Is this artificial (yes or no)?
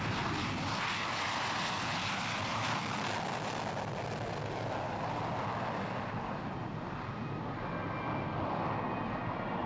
no